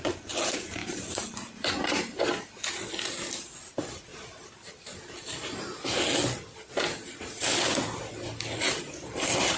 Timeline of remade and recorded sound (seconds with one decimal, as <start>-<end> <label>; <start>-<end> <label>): 0.0-2.3 remade; 2.3-3.6 recorded; 3.6-4.1 remade; 4.1-8.6 recorded; 8.6-9.6 remade